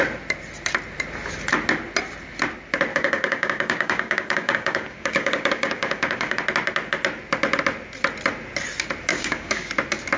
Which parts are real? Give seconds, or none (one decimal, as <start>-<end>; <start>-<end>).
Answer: 0.0-2.9; 6.4-9.1; 9.7-10.2